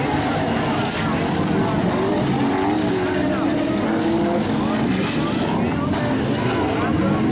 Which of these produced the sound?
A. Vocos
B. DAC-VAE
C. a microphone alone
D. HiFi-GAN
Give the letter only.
C